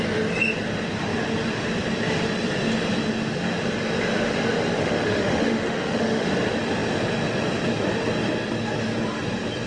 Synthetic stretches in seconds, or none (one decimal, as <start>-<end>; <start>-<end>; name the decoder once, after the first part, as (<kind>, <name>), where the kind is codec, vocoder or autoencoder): 4.8-6.3 (autoencoder, DAC-VAE)